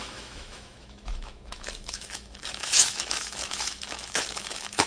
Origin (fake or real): fake